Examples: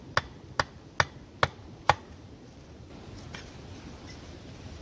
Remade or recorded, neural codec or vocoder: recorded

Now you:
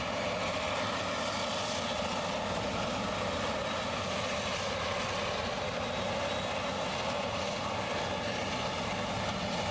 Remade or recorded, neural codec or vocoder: recorded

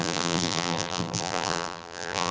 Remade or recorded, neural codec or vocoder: remade, vocoder, BigVGAN v2